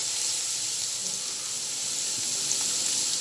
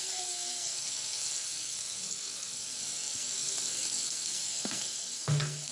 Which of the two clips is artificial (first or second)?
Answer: second